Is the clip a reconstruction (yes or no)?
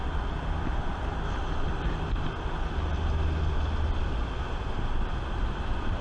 no